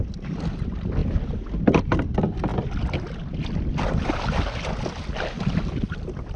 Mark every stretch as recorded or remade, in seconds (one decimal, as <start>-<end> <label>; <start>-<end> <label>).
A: 0.0-6.4 recorded